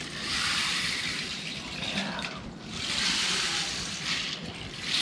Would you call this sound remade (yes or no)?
yes